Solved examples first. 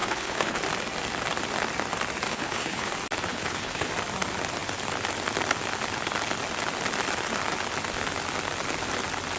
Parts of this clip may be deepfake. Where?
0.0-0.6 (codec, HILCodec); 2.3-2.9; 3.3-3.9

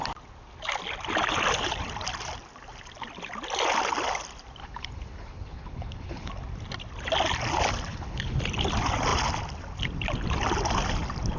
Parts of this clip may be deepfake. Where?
4.6-6.3 (codec, HILCodec); 7.9-8.4

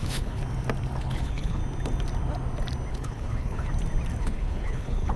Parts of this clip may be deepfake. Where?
0.0-0.4 (codec, HILCodec); 1.0-1.6; 2.9-3.7; 4.2-5.2

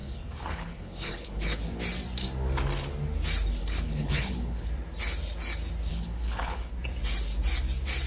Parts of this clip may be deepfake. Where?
0.0-1.6 (codec, HILCodec); 3.6-4.7; 5.9-6.7

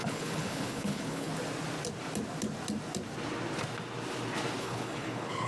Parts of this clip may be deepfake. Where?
0.0-1.3 (codec, HILCodec); 4.6-5.5

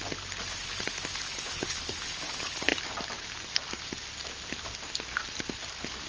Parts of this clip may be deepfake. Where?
1.2-2.7 (codec, HILCodec)

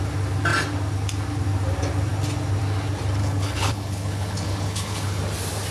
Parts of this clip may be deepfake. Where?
3.2-5.2 (codec, HILCodec)